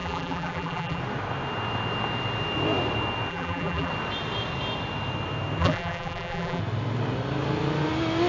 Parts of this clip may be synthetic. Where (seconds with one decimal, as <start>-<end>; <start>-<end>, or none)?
0.0-1.0; 3.3-3.9; 5.6-6.6